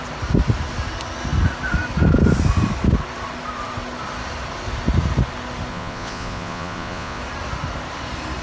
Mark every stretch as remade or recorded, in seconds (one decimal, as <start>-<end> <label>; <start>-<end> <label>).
0.0-5.7 recorded; 5.7-7.2 remade; 7.2-8.4 recorded

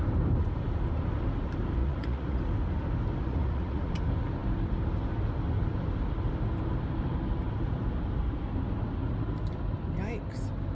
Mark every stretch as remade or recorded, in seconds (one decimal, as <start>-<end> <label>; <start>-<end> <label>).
0.0-1.8 recorded; 1.8-2.4 remade; 2.4-3.2 recorded; 3.2-3.9 remade; 3.9-10.7 recorded

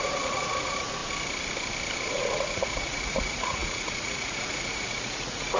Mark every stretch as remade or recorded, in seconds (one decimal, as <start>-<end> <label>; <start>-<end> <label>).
0.0-1.0 remade; 1.0-2.0 recorded; 2.0-5.6 remade

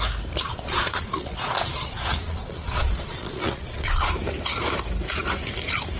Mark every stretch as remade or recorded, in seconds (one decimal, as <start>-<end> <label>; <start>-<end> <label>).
0.0-0.5 recorded; 0.5-4.1 remade; 4.1-6.0 recorded

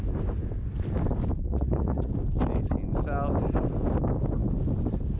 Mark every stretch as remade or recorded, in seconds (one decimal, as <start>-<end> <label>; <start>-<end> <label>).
0.0-1.5 recorded; 1.5-2.1 remade; 2.1-5.2 recorded

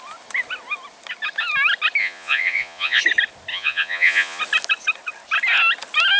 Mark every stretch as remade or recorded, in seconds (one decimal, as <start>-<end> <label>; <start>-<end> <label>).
0.0-2.0 recorded; 2.0-3.0 remade; 3.0-3.5 recorded; 3.5-4.4 remade; 4.4-6.2 recorded

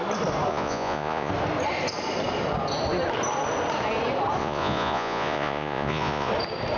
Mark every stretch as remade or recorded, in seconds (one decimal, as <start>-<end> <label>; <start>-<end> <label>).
0.0-0.5 recorded; 0.5-1.3 remade; 1.3-4.4 recorded; 4.4-6.3 remade; 6.3-6.8 recorded

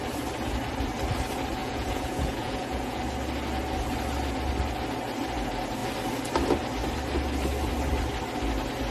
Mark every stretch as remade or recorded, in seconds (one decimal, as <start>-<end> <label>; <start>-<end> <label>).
0.0-1.6 recorded; 1.6-3.0 remade; 3.0-8.9 recorded